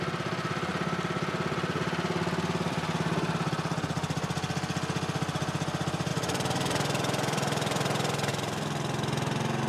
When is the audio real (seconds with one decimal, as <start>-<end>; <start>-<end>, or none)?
0.0-6.1; 8.3-9.7